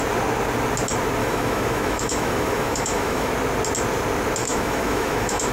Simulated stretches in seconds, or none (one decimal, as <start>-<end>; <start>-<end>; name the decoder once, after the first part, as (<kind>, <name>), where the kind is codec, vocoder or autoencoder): 1.2-3.3 (autoencoder, DAC-VAE); 4.4-5.5